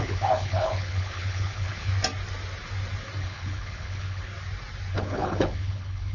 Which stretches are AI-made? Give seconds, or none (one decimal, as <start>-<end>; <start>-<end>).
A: 0.0-1.9; 3.2-4.3; 4.9-6.1